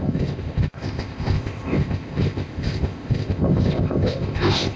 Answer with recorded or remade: remade